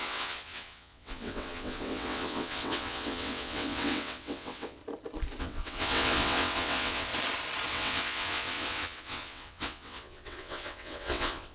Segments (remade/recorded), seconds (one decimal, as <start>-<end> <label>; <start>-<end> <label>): 0.0-4.8 remade; 4.8-5.4 recorded; 5.4-7.1 remade; 7.1-7.7 recorded; 7.7-11.5 remade